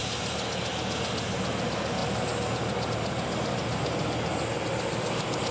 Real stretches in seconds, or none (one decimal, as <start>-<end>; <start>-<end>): 0.0-5.5